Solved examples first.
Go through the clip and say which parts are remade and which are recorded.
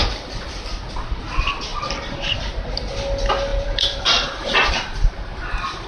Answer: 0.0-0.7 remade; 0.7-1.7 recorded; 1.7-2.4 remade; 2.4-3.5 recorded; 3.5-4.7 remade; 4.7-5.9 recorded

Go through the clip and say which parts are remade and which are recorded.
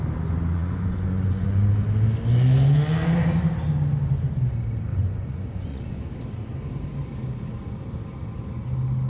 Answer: 0.0-0.5 recorded; 0.5-1.7 remade; 1.7-4.9 recorded; 4.9-6.0 remade; 6.0-9.1 recorded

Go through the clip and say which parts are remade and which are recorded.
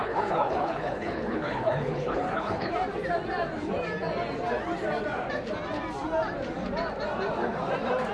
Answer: 0.0-2.7 remade; 2.7-8.1 recorded